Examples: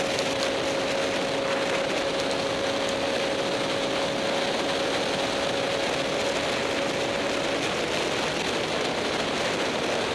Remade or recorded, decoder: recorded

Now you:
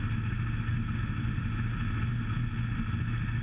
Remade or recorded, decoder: recorded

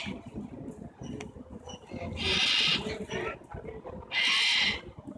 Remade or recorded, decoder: recorded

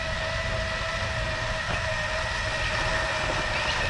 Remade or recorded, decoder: recorded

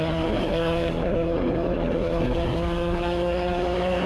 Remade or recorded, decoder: remade, codec, SNAC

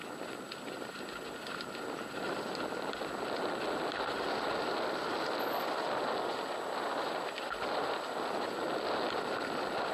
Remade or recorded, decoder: recorded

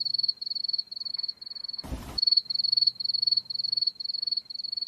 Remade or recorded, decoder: recorded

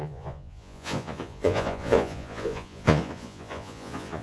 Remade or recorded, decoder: remade, vocoder, Vocos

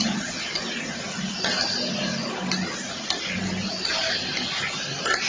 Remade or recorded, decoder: recorded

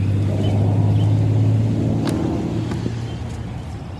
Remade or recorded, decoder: recorded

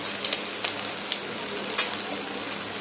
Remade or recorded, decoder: recorded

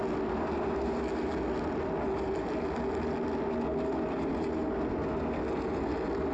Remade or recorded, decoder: recorded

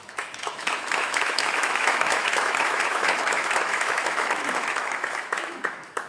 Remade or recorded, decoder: remade, autoencoder, DAC-VAE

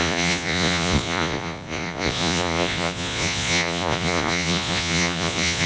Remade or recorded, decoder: remade, vocoder, Vocos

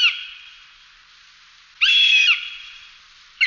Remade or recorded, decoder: recorded